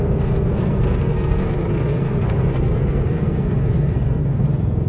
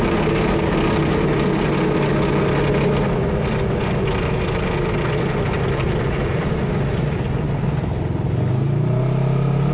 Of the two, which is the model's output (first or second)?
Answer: first